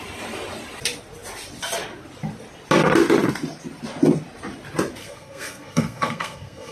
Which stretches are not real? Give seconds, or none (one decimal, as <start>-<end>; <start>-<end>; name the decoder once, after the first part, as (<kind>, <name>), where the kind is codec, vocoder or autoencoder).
5.0-6.7 (codec, SNAC)